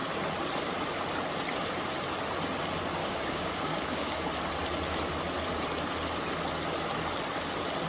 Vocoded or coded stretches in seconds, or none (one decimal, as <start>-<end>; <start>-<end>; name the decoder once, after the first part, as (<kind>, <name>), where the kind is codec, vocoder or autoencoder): 3.0-4.2 (codec, DAC)